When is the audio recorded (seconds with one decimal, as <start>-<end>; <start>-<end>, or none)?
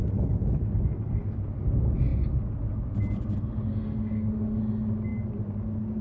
0.0-3.7; 4.6-6.0